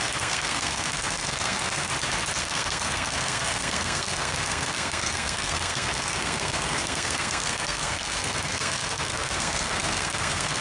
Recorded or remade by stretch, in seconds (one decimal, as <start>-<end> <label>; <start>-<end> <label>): 0.0-1.9 remade; 1.9-2.4 recorded; 2.4-10.6 remade